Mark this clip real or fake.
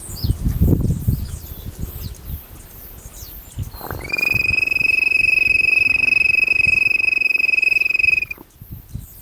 real